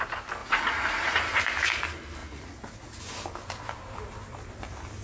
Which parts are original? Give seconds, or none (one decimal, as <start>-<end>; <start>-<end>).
0.0-0.4; 1.4-2.2; 3.0-5.0